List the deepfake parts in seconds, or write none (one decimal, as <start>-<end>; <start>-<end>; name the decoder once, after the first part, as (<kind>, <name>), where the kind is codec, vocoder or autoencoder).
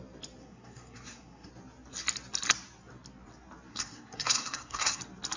0.4-1.5 (codec, SNAC); 3.7-5.0